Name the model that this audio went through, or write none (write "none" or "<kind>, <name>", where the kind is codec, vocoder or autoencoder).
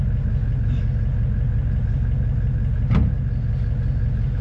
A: none